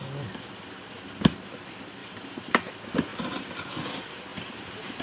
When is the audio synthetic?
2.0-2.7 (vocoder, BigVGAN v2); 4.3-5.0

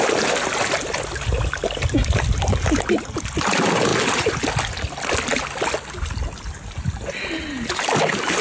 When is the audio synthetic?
none

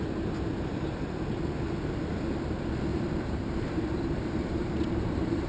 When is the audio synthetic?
2.9-5.5 (vocoder, BigVGAN v2)

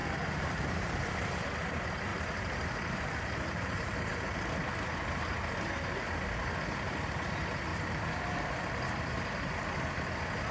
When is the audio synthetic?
0.0-1.4 (vocoder, BigVGAN v2); 2.1-5.1; 7.7-9.2

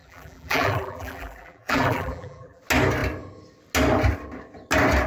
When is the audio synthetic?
0.0-2.6 (vocoder, BigVGAN v2)

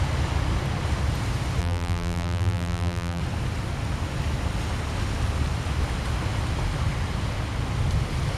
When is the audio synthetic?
1.6-3.2 (vocoder, BigVGAN v2)

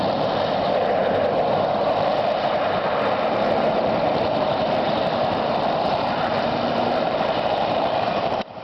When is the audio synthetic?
0.0-1.0 (vocoder, BigVGAN v2); 1.9-8.6